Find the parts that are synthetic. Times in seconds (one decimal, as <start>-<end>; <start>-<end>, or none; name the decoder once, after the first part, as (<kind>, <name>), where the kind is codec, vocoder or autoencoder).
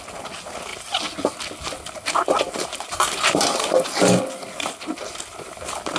none